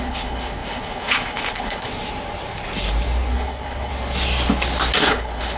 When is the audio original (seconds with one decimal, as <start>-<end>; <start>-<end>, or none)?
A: 1.9-3.3; 3.9-5.0